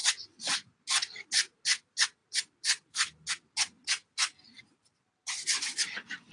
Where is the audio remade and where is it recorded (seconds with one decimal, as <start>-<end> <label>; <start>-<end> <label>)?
0.0-6.3 recorded